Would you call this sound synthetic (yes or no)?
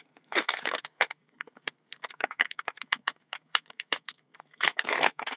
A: yes